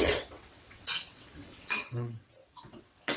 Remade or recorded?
remade